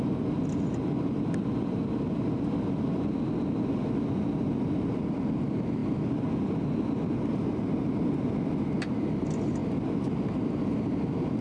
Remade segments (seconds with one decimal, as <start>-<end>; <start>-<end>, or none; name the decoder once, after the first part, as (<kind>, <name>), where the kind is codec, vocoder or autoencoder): none